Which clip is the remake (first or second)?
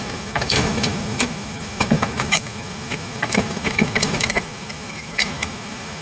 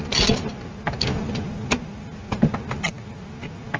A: first